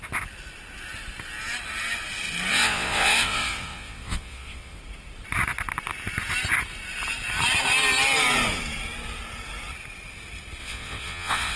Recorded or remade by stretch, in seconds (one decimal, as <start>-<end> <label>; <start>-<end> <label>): 0.0-2.5 recorded; 2.5-4.8 remade; 4.8-10.6 recorded; 10.6-11.6 remade